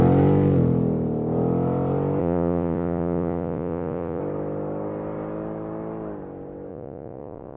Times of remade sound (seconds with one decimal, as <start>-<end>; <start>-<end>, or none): 2.2-4.2; 6.7-7.6